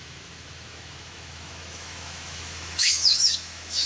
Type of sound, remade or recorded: remade